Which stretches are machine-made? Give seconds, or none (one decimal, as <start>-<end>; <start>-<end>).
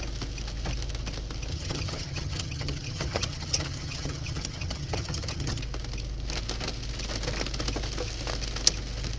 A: 1.5-5.6